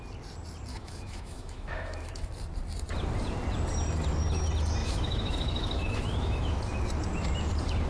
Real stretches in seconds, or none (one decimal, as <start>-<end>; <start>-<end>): 0.0-0.7; 2.3-4.8; 6.6-7.9